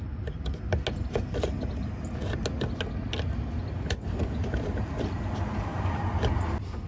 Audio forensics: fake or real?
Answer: real